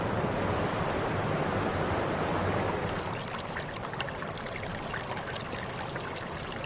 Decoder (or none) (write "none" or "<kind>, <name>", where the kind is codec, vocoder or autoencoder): none